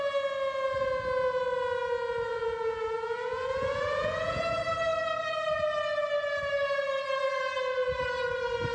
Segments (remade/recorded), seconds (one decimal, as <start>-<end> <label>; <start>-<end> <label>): 0.0-2.3 recorded; 2.3-4.4 remade; 4.4-8.7 recorded